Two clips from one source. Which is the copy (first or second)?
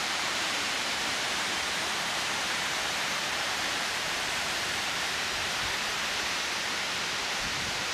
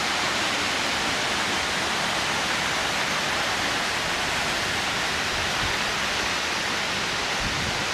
first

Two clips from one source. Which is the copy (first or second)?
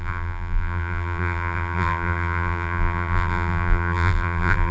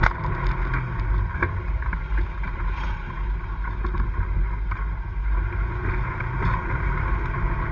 first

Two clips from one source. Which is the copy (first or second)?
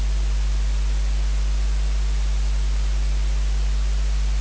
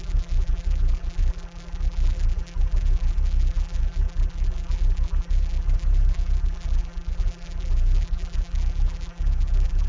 second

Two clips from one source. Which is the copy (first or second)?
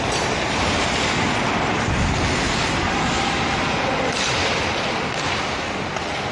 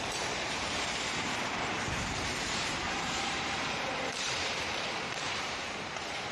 second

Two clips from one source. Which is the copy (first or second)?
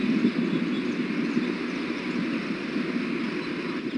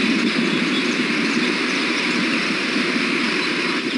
second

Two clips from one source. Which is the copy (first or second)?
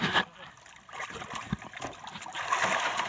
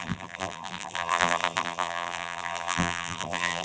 second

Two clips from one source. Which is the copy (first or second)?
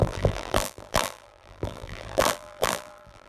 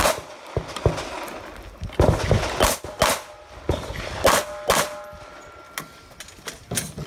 first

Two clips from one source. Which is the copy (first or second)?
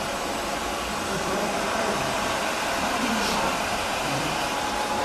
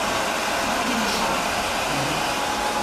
first